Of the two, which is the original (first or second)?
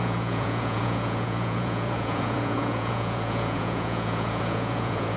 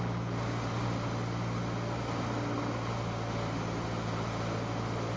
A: second